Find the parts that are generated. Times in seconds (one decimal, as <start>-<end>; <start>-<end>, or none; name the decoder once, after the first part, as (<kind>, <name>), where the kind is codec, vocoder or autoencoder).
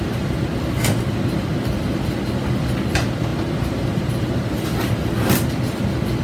none